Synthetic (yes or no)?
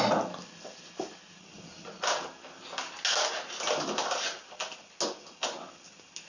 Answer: no